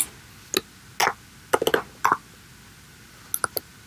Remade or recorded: recorded